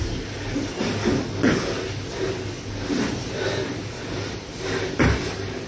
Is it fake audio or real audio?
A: real